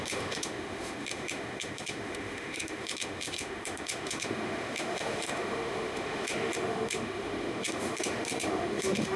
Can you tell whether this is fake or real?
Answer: fake